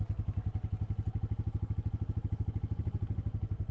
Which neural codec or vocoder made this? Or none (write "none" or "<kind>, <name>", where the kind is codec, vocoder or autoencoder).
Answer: none